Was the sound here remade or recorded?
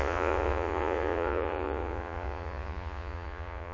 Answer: remade